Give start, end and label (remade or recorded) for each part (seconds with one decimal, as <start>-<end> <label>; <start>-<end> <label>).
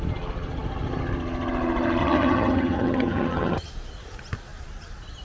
0.0-2.0 recorded; 2.0-3.7 remade; 3.7-5.2 recorded